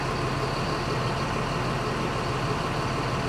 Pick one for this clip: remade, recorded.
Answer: recorded